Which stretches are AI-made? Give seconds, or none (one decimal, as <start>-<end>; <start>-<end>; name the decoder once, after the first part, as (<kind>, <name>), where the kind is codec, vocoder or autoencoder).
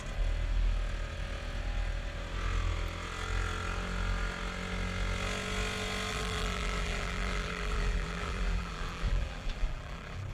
6.1-10.3 (vocoder, BigVGAN v2)